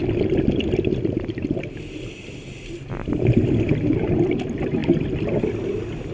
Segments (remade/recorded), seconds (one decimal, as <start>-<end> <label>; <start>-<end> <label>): 0.0-6.1 recorded